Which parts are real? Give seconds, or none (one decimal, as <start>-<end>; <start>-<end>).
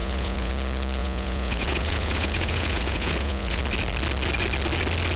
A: 0.5-1.0; 3.6-5.2